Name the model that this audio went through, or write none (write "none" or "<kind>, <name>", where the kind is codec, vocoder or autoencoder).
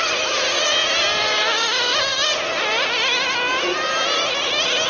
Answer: none